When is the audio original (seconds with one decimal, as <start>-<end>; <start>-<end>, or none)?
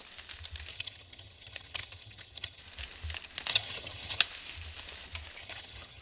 0.0-0.7; 2.6-3.5; 4.2-5.4